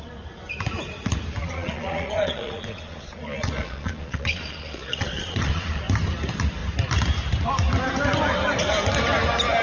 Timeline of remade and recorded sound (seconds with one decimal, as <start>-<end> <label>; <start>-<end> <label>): 0.0-1.4 recorded; 1.4-5.8 remade; 5.8-9.6 recorded